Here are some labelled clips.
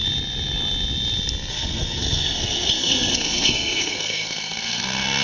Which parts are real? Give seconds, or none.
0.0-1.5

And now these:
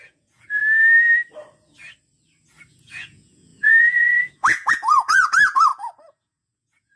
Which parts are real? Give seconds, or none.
0.6-2.7